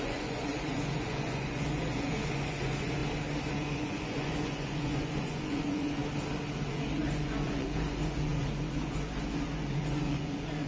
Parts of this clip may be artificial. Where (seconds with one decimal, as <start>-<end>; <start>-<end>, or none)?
0.0-3.0; 3.5-6.0; 6.7-10.7